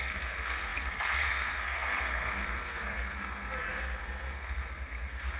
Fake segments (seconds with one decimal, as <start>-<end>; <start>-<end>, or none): 0.0-5.4